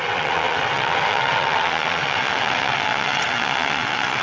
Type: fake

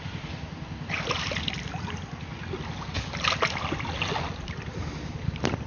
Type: real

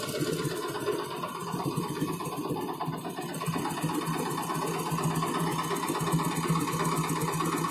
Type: real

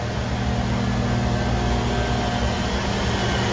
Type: real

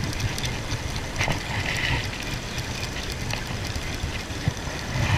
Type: real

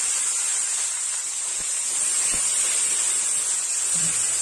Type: real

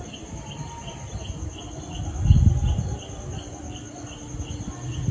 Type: real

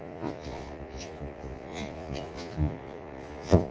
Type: fake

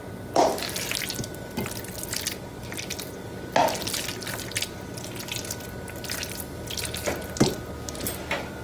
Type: real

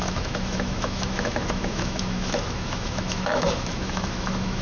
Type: fake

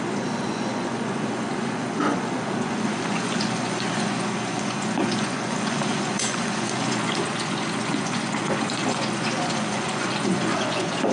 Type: fake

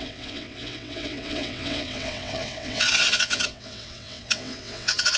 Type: fake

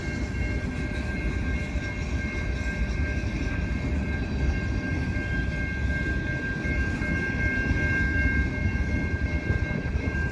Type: real